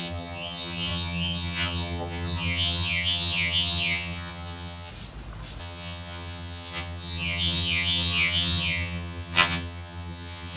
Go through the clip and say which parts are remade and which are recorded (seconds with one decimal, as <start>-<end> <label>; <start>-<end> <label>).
0.0-4.9 remade; 4.9-5.6 recorded; 5.6-10.6 remade